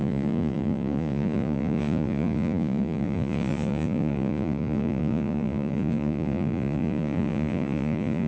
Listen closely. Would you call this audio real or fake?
fake